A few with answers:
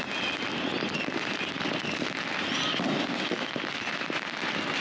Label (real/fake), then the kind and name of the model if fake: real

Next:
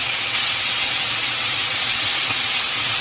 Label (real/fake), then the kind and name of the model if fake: fake, vocoder, WaveNeXt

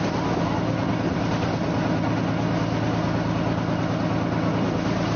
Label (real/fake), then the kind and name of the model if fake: real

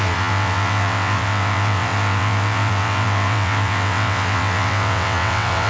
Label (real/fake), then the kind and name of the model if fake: fake, vocoder, WaveNeXt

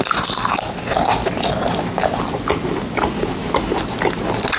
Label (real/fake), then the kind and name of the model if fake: real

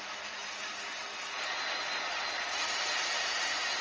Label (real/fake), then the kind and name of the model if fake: real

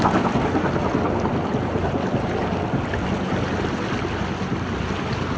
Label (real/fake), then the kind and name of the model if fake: real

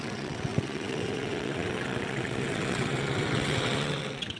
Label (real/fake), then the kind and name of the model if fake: fake, vocoder, WaveNeXt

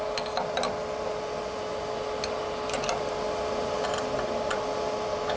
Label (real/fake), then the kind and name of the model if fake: real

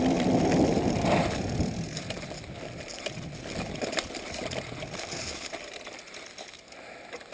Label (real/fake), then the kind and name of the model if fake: real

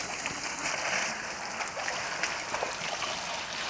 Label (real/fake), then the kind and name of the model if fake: real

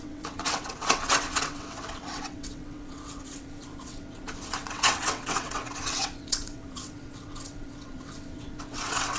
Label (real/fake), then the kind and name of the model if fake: fake, vocoder, WaveNeXt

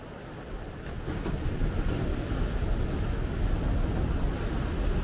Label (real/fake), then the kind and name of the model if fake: real